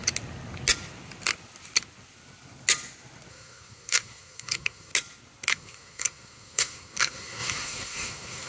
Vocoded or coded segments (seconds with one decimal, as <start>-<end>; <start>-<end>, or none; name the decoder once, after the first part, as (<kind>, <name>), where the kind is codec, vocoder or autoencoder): 3.3-4.9 (codec, SNAC); 5.5-8.5